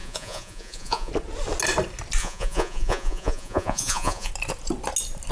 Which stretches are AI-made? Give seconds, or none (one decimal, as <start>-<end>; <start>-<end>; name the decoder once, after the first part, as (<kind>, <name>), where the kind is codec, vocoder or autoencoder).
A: 0.0-1.1 (vocoder, Vocos); 2.2-4.3